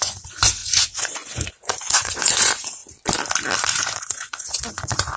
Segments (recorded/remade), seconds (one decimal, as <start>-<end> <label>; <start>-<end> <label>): 0.0-2.8 remade; 2.8-3.6 recorded; 3.6-5.2 remade